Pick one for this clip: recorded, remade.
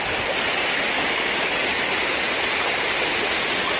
recorded